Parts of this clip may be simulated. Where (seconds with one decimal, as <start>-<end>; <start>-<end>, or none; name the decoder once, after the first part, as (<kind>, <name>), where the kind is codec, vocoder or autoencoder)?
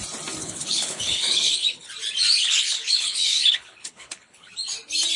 0.4-1.9 (codec, HILCodec); 2.4-4.5